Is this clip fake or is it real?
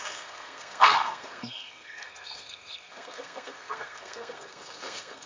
fake